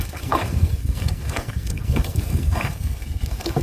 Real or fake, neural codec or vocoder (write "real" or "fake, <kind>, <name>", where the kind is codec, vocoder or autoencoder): fake, codec, SNAC